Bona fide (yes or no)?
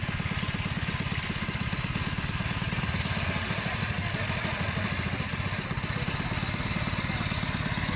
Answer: yes